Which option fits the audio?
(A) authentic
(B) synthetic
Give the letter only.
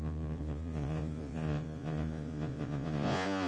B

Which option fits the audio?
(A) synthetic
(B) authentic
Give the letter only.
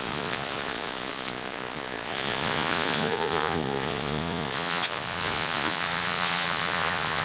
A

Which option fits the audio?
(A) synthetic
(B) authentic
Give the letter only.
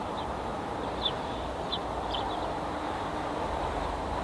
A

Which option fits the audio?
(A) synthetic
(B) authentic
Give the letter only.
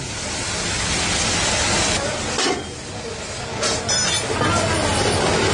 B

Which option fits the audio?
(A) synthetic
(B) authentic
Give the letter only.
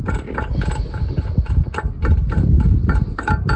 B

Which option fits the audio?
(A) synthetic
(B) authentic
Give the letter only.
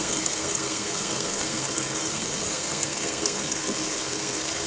A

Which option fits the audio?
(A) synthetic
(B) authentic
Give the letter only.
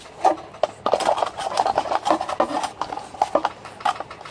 B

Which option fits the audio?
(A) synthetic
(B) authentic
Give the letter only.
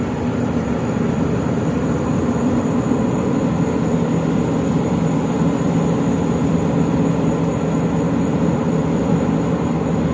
B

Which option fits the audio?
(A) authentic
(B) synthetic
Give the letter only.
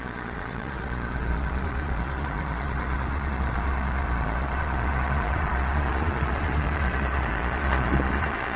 B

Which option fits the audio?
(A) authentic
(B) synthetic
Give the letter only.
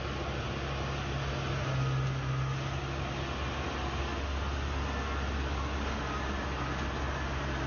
A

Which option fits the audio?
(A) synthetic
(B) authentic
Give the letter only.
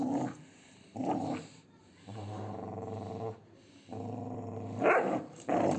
A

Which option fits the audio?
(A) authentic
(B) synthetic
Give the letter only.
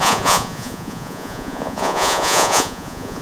B